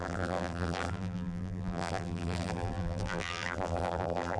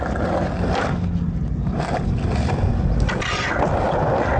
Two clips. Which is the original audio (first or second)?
second